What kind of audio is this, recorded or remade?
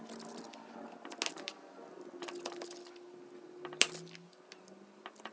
recorded